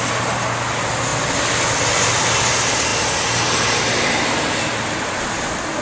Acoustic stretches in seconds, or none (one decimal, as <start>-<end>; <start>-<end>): 0.0-5.8